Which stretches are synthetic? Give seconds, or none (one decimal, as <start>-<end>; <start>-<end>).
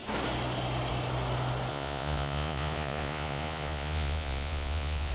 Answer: 1.7-5.1